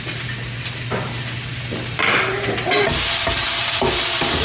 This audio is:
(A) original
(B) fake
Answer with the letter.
A